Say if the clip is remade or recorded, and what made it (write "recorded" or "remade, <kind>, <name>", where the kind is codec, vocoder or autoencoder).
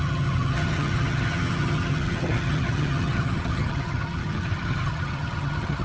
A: remade, vocoder, HiFi-GAN